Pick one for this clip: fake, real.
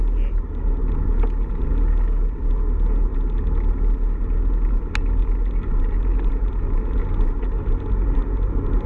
real